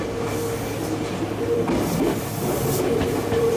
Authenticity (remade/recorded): recorded